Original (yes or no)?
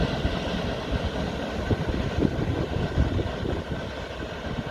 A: yes